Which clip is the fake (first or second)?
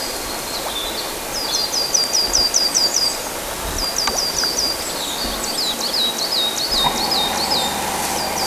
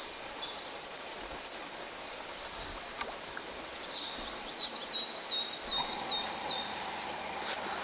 second